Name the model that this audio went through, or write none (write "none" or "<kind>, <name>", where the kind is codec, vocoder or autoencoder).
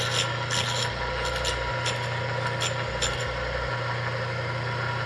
none